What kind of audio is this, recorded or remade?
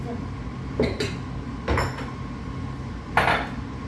recorded